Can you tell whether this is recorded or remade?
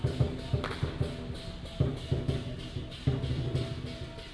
recorded